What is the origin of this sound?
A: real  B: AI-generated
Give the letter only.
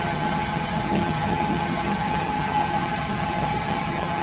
B